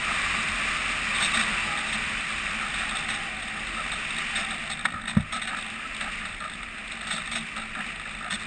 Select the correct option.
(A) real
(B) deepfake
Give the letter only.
A